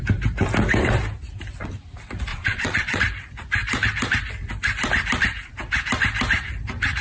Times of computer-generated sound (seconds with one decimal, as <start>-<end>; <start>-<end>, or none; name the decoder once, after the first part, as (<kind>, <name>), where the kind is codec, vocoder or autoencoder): 2.3-3.0 (vocoder, Vocos)